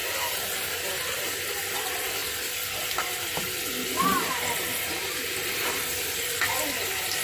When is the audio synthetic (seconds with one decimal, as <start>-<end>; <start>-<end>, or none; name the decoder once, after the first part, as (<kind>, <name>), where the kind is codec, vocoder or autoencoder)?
0.0-1.6 (vocoder, BigVGAN v2)